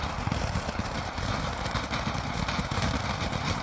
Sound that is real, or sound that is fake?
fake